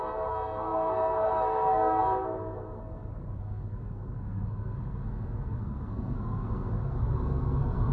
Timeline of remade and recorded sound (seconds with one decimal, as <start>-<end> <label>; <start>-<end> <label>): 0.0-7.9 remade